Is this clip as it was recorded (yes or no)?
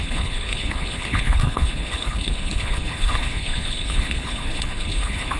no